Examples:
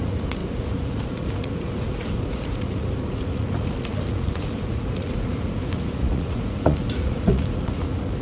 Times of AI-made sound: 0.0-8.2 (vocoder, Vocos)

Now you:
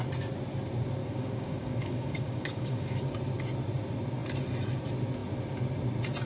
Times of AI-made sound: 1.0-3.0 (codec, DAC)

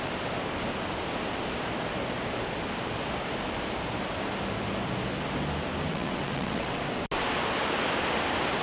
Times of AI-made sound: 5.9-6.8 (vocoder, WaveNeXt)

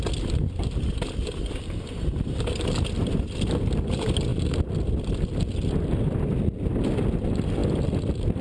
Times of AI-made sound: none

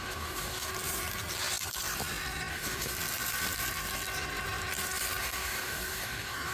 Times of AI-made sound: 0.0-0.7 (codec, DAC); 2.5-2.9; 5.2-6.5

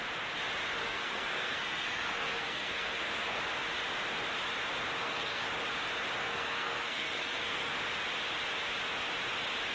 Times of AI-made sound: 0.8-3.4 (codec, SNAC); 5.0-5.5; 6.2-7.7